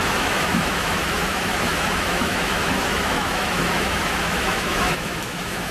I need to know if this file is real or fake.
fake